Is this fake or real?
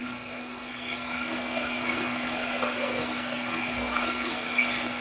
fake